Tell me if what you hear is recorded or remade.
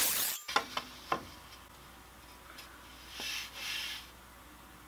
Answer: recorded